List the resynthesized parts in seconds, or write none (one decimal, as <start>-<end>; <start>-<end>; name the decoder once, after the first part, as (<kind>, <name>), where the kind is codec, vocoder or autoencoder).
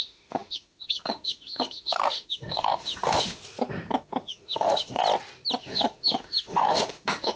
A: 0.0-3.4 (autoencoder, DAC-VAE); 4.0-5.0; 5.6-7.4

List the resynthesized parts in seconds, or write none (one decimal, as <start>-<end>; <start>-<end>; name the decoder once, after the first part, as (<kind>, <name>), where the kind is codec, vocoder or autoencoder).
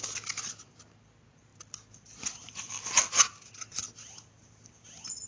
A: none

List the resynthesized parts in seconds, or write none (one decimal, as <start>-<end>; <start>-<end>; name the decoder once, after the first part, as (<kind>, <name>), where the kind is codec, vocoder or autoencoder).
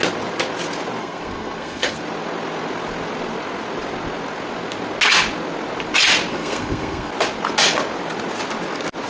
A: 1.0-2.0 (codec, SNAC); 6.3-7.1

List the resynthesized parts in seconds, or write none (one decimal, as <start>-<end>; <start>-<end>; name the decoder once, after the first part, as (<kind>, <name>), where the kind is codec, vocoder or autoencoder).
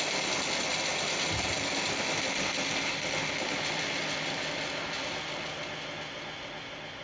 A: none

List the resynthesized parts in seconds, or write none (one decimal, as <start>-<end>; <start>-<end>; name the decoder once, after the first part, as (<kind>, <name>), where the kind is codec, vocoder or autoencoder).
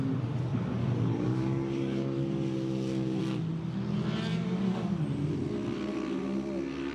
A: 0.5-3.2 (codec, DAC); 4.3-5.0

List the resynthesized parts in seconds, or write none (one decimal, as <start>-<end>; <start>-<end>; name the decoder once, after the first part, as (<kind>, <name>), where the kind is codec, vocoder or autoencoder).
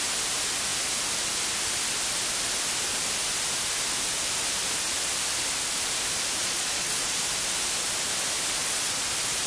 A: 6.4-7.2 (vocoder, Vocos); 8.6-9.1